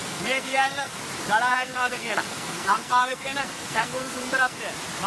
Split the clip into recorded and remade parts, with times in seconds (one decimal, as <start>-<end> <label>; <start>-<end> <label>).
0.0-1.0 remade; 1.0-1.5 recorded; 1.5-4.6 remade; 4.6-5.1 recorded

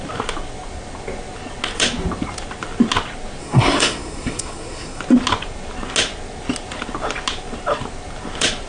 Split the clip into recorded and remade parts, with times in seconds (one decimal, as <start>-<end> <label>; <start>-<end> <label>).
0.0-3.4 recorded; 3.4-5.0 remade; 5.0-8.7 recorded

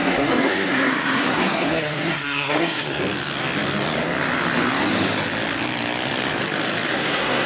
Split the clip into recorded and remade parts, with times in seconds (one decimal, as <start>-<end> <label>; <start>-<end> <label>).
0.0-3.0 remade; 3.0-6.9 recorded; 6.9-7.5 remade

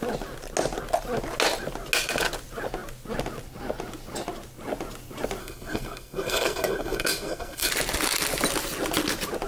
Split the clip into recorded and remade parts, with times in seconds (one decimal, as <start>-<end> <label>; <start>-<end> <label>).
0.0-5.4 recorded; 5.4-7.7 remade; 7.7-9.5 recorded

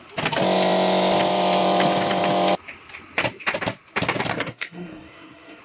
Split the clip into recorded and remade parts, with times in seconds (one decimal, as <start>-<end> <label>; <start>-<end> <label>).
0.0-4.3 recorded; 4.3-5.6 remade